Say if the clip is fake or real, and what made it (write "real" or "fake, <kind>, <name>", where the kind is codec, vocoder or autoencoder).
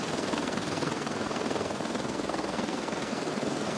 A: fake, codec, SNAC